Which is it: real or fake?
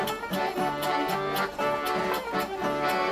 real